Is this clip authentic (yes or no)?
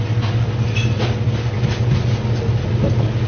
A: yes